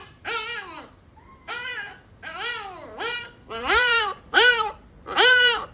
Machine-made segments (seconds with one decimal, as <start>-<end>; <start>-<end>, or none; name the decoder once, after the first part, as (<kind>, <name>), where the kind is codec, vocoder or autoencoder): 1.5-5.7 (vocoder, BigVGAN v2)